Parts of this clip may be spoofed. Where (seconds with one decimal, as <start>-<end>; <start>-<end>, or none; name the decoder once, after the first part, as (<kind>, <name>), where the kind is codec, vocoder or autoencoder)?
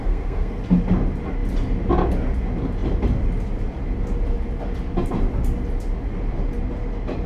0.0-0.6 (codec, SNAC)